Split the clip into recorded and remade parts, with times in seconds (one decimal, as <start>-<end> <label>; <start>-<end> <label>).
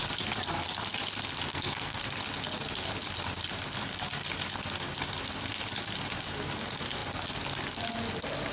0.0-1.5 recorded; 1.5-2.0 remade; 2.0-8.5 recorded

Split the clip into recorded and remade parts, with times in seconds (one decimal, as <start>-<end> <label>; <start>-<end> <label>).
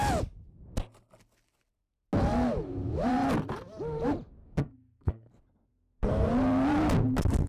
0.0-4.4 recorded; 4.4-5.3 remade; 5.3-5.7 recorded; 5.7-6.3 remade; 6.3-7.5 recorded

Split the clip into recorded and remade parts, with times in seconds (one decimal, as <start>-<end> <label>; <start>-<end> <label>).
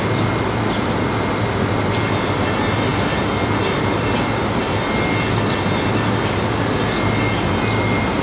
0.0-8.2 recorded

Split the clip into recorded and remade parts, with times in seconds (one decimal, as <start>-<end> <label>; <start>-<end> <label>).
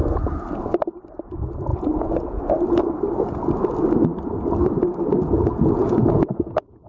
0.0-1.7 recorded; 1.7-2.4 remade; 2.4-5.8 recorded; 5.8-6.9 remade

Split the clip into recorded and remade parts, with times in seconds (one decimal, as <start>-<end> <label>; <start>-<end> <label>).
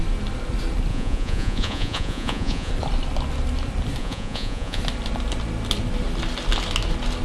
0.0-0.9 recorded; 0.9-2.7 remade; 2.7-4.0 recorded; 4.0-4.8 remade; 4.8-7.2 recorded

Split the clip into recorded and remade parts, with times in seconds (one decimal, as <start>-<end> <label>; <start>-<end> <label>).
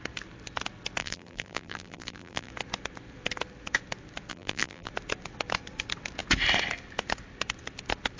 0.0-1.0 recorded; 1.0-2.5 remade; 2.5-4.3 recorded; 4.3-4.9 remade; 4.9-8.2 recorded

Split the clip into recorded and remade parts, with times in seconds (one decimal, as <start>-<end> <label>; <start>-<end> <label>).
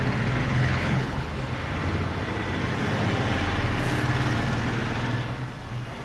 0.0-0.4 recorded; 0.4-1.3 remade; 1.3-6.0 recorded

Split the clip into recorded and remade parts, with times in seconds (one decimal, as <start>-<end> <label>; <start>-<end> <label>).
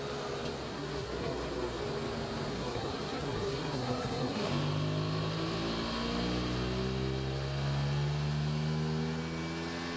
0.0-0.7 recorded; 0.7-1.8 remade; 1.8-2.5 recorded; 2.5-4.5 remade; 4.5-10.0 recorded